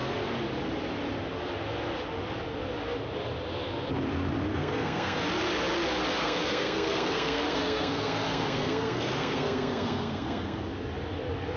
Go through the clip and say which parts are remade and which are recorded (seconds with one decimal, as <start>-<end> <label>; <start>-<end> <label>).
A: 0.0-4.5 recorded; 4.5-5.2 remade; 5.2-6.2 recorded; 6.2-10.6 remade; 10.6-11.6 recorded